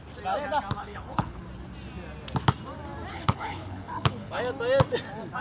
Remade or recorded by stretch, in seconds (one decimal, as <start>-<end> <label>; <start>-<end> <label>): 0.0-0.8 recorded; 0.8-1.4 remade; 1.4-3.1 recorded; 3.1-4.4 remade; 4.4-5.4 recorded